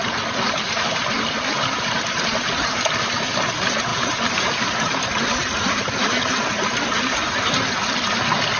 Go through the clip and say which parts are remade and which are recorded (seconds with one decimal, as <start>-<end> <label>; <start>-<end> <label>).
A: 0.0-1.0 remade; 1.0-3.9 recorded; 3.9-8.2 remade; 8.2-8.6 recorded